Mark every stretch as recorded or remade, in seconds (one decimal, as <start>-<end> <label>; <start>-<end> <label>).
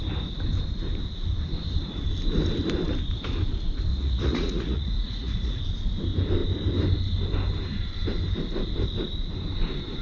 0.0-3.9 recorded; 3.9-5.6 remade; 5.6-10.0 recorded